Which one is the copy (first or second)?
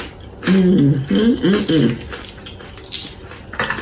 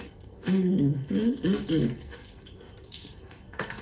second